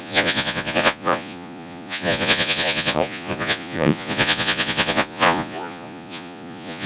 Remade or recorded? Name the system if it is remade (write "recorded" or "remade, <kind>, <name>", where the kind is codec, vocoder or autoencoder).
remade, vocoder, Vocos